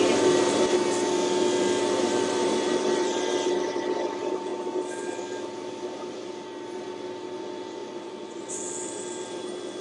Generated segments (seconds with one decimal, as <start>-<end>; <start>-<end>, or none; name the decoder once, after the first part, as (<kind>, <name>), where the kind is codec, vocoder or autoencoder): 7.8-8.5 (vocoder, Vocos)